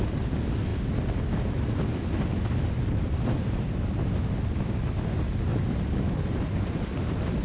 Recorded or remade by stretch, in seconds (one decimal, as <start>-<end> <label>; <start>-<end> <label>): 0.0-5.5 recorded; 5.5-6.3 remade; 6.3-7.4 recorded